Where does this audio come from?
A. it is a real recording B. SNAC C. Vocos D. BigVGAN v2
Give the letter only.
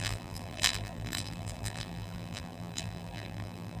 D